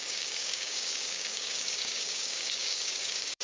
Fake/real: fake